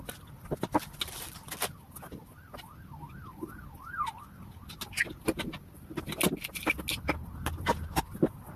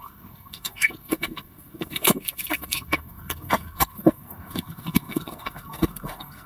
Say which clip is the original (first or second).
first